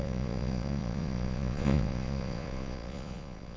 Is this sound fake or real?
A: fake